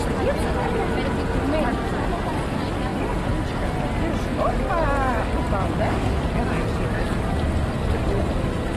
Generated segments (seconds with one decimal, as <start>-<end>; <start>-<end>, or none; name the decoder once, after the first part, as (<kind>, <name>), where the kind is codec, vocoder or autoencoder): none